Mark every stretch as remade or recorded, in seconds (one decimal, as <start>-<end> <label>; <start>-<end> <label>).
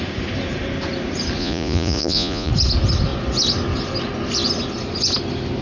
0.0-1.4 recorded; 1.4-2.5 remade; 2.5-5.6 recorded